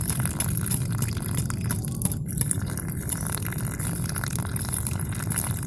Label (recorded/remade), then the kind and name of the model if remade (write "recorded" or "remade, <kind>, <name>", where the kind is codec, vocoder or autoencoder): recorded